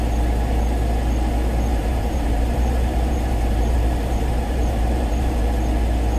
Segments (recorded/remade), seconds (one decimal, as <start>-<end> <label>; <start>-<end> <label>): 0.0-1.7 recorded; 1.7-5.4 remade; 5.4-6.2 recorded